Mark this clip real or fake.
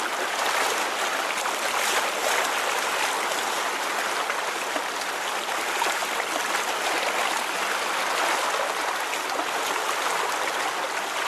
real